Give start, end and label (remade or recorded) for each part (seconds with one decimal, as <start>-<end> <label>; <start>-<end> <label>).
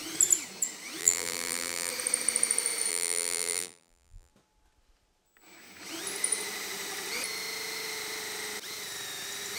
0.0-1.0 recorded; 1.0-1.9 remade; 1.9-2.9 recorded; 2.9-4.3 remade; 4.3-9.6 recorded